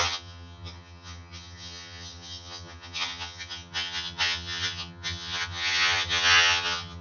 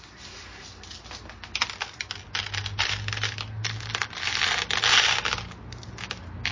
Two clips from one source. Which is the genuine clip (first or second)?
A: second